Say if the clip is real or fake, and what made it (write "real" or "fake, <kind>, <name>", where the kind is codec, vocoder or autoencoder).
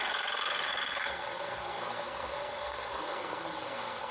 fake, codec, SNAC